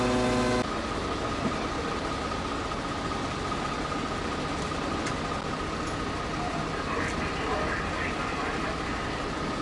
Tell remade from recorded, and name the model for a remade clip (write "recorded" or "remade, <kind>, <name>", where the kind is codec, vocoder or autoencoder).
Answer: recorded